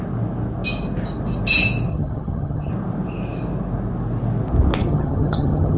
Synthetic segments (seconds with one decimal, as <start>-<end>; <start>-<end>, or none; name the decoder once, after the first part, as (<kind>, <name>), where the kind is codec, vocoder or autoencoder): 1.9-2.7 (vocoder, HiFi-GAN); 4.8-5.8